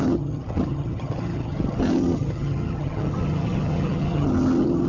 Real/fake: fake